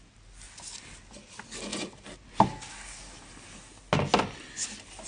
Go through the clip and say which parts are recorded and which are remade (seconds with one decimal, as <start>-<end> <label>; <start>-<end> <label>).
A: 0.0-5.1 recorded